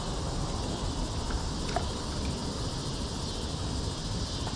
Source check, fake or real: real